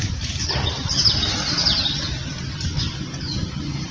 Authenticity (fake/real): fake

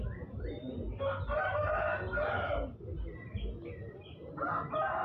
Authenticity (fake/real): real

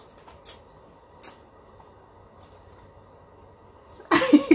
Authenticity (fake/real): real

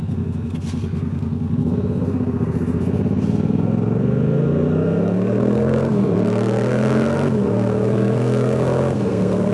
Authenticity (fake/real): fake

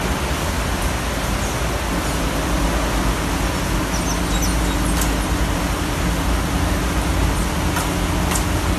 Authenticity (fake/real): real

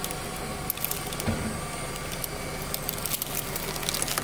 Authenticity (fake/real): real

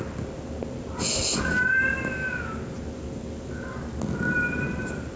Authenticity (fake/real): real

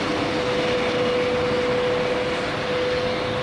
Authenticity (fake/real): real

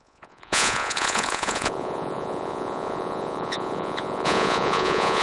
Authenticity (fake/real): fake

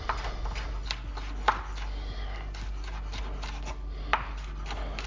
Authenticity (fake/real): real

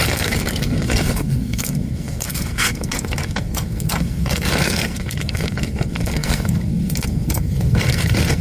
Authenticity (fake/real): fake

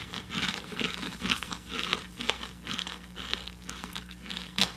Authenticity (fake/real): fake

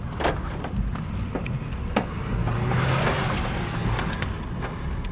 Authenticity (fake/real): real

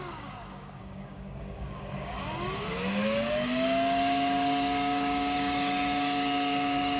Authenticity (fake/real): fake